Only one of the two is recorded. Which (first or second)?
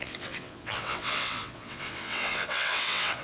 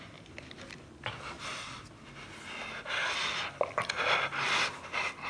second